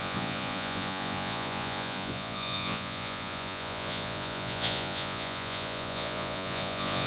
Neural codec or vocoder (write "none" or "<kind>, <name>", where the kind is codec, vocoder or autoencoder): vocoder, Vocos